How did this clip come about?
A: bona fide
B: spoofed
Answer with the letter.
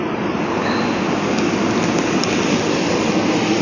A